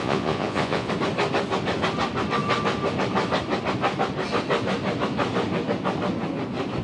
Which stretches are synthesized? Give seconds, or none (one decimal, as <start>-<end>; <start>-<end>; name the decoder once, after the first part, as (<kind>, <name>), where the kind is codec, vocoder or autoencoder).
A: 0.0-0.9 (vocoder, Vocos)